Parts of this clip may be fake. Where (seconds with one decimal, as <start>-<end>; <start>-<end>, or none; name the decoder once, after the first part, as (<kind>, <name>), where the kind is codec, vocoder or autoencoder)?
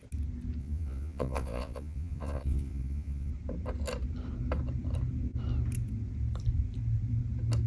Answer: 0.6-3.3 (vocoder, Vocos)